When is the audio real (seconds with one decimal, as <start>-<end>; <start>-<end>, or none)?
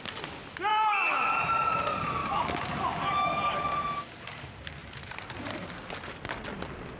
0.0-0.7; 1.8-2.2; 2.8-4.8; 5.7-7.0